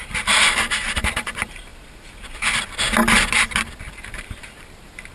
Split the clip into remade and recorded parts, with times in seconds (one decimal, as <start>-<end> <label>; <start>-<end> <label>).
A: 0.0-1.7 remade; 1.7-3.9 recorded; 3.9-5.1 remade